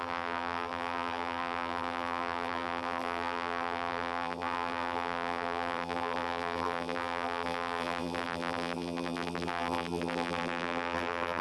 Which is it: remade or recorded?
remade